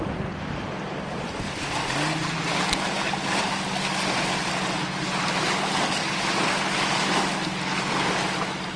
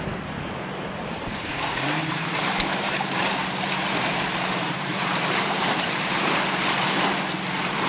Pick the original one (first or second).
first